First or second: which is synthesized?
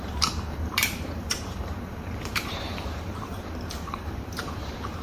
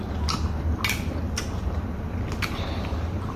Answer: first